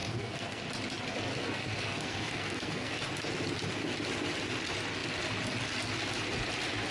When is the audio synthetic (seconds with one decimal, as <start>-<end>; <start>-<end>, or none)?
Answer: 0.0-0.6; 1.4-2.9